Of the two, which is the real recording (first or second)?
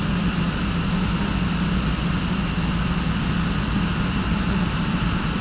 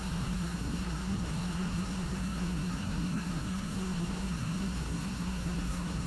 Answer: first